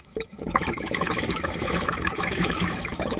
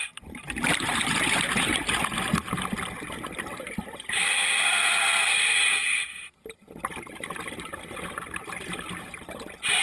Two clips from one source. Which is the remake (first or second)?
first